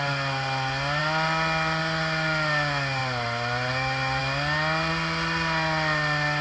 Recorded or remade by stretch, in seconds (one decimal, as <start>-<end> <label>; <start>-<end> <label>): 0.0-6.4 recorded